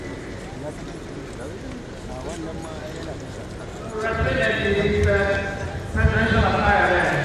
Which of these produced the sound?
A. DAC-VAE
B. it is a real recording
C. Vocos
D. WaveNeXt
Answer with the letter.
B